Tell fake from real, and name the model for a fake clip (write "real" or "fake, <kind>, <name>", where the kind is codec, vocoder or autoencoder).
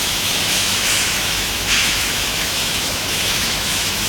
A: fake, autoencoder, DAC-VAE